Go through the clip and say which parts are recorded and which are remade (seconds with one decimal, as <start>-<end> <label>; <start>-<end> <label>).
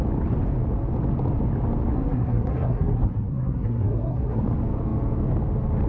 0.0-1.9 recorded; 1.9-4.4 remade; 4.4-5.9 recorded